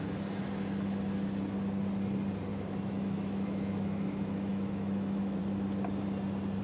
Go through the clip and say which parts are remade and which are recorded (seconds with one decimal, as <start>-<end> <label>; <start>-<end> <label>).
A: 0.0-2.5 recorded; 2.5-5.4 remade; 5.4-6.6 recorded